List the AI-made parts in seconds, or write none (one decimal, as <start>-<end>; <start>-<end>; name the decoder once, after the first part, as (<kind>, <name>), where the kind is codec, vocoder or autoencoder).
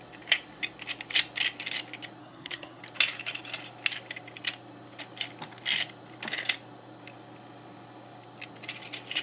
2.2-2.8 (codec, SNAC)